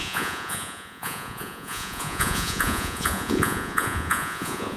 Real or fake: fake